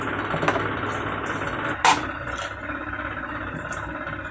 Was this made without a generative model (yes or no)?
yes